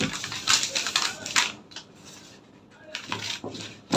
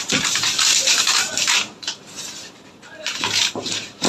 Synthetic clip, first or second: second